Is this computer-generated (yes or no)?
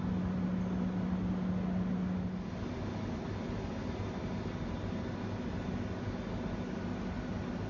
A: no